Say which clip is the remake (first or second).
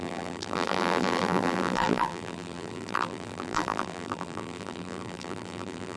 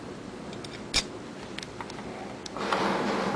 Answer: first